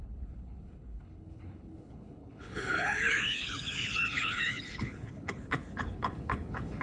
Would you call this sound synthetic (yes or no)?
yes